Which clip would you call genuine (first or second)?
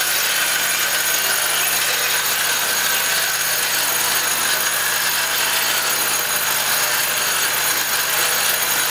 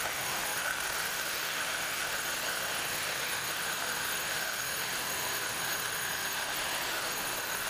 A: first